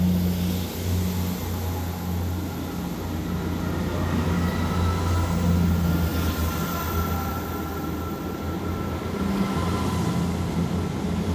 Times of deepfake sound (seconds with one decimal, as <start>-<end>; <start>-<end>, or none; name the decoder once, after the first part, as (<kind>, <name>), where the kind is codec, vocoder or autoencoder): none